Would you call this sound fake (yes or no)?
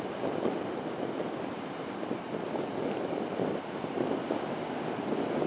no